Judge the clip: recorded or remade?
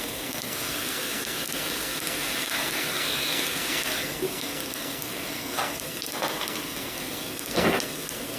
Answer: remade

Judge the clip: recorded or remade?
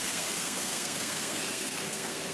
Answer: remade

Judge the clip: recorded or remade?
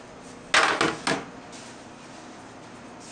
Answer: recorded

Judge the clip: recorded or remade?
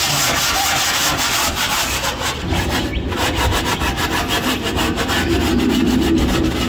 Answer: recorded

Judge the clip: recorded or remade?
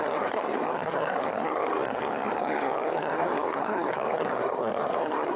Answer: remade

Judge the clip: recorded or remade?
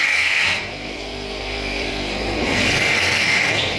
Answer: remade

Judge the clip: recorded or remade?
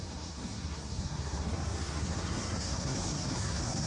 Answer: remade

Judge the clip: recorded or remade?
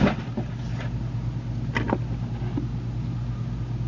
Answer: recorded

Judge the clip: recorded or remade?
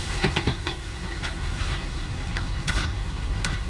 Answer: remade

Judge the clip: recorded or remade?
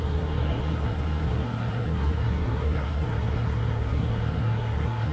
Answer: remade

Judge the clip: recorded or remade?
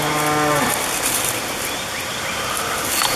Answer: recorded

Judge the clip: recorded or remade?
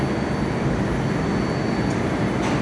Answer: recorded